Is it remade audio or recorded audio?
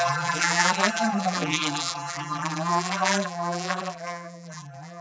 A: remade